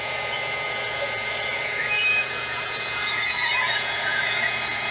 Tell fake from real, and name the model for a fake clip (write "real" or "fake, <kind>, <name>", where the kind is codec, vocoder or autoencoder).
fake, vocoder, Vocos